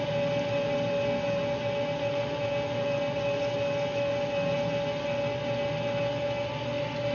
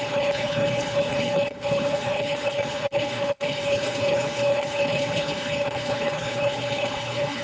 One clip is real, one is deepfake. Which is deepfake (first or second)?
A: second